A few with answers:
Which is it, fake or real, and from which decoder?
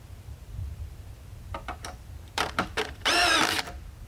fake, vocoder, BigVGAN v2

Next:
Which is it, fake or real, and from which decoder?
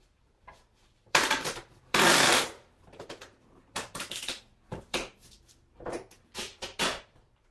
fake, vocoder, BigVGAN v2